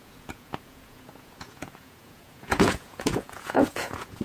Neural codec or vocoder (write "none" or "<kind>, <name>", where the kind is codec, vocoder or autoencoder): vocoder, Vocos